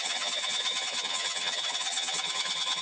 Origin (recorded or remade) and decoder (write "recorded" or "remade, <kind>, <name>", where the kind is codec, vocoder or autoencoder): remade, vocoder, HiFi-GAN